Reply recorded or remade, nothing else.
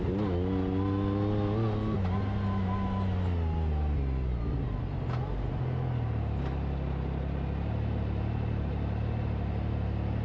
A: recorded